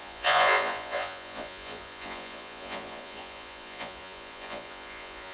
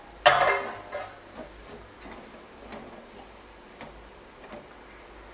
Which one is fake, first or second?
first